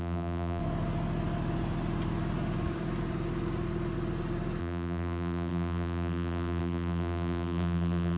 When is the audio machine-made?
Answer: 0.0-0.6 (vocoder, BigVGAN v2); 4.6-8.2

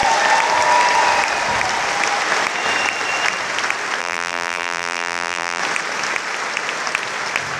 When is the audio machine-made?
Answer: 4.0-5.6 (vocoder, BigVGAN v2)

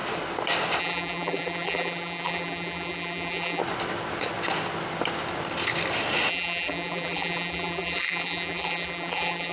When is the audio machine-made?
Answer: 0.8-3.6 (vocoder, BigVGAN v2); 6.3-9.5

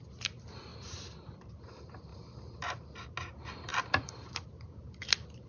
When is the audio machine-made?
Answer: 0.7-1.5 (vocoder, BigVGAN v2); 2.1-3.1

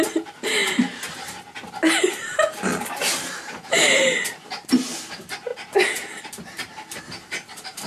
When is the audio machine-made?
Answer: 0.0-0.6 (vocoder, BigVGAN v2); 1.9-2.7; 3.5-7.9